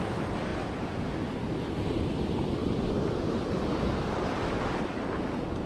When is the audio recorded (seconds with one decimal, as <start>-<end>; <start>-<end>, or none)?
0.0-5.7